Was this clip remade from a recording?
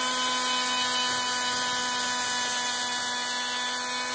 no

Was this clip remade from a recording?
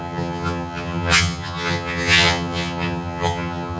yes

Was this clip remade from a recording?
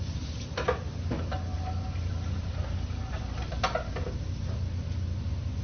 no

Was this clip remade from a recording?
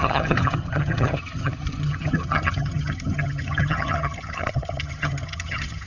yes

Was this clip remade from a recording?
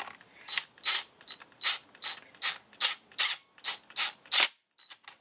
no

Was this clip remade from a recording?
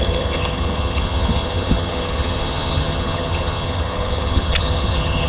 yes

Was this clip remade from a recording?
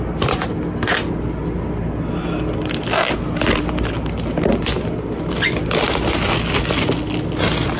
no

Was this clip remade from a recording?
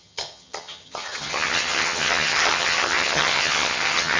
yes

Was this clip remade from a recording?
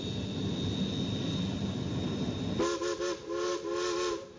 no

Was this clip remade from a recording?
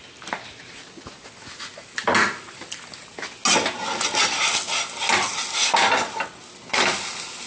no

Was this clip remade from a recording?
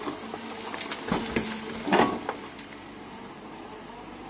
no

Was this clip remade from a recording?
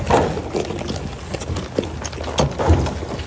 no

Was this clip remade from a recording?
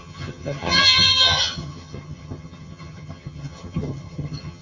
yes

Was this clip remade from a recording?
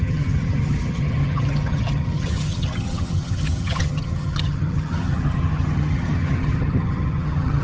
yes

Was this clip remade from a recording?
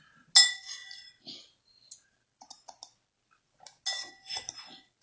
no